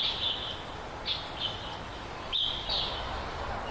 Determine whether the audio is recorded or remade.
recorded